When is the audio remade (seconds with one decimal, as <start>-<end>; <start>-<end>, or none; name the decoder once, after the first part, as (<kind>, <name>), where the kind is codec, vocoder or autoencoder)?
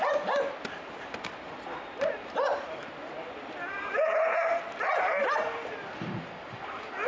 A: 2.5-5.9 (vocoder, BigVGAN v2)